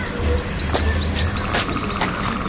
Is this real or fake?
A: real